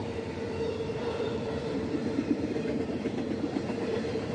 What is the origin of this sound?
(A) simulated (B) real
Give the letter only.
A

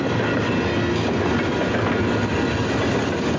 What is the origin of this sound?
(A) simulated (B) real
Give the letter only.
B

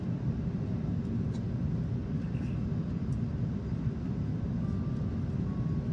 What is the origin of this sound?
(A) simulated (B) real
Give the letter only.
B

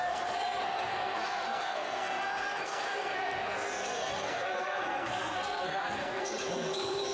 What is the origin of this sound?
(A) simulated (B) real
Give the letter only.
A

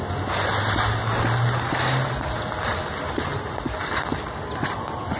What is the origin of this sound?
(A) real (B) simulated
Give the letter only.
A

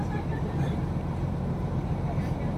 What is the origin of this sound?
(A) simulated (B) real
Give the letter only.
A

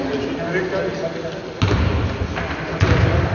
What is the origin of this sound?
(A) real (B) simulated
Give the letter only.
A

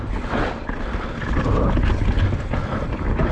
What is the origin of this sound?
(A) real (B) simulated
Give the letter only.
A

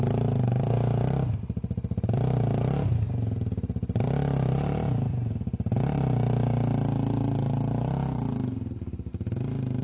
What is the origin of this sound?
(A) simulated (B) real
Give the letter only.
B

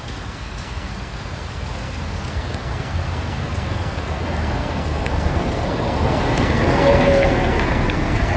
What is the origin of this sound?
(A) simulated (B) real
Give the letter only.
A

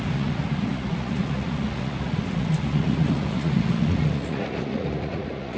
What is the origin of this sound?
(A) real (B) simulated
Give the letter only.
B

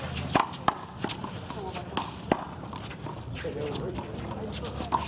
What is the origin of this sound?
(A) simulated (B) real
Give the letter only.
B